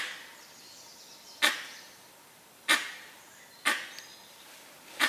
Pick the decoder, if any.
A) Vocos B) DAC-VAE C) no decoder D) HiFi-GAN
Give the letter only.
C